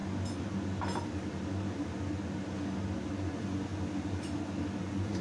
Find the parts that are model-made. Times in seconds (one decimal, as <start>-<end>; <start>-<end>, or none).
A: 3.1-3.7; 4.8-5.2